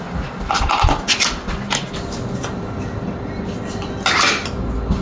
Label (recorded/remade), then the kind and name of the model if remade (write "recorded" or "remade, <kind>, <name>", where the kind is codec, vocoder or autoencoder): recorded